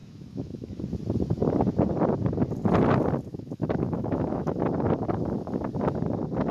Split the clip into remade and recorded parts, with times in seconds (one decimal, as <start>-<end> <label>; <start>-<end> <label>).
0.0-0.8 remade; 0.8-3.3 recorded; 3.3-4.6 remade; 4.6-6.5 recorded